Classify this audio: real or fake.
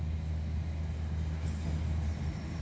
real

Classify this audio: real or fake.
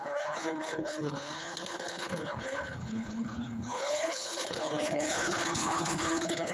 fake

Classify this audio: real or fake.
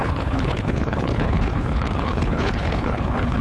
fake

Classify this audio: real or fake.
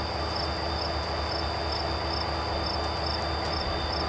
real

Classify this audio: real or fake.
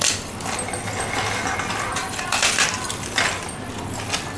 real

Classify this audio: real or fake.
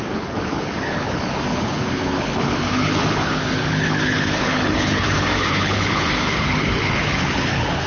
fake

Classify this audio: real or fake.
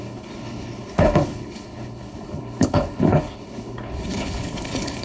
fake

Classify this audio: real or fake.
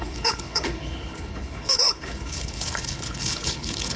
fake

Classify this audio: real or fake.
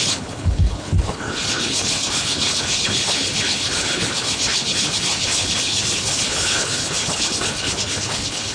fake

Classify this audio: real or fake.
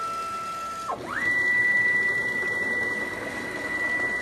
real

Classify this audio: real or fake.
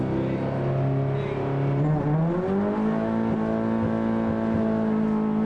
real